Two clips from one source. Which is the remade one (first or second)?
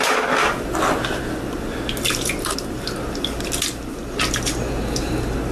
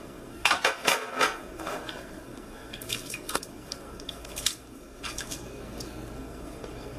second